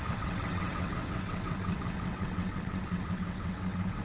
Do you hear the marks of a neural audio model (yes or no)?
yes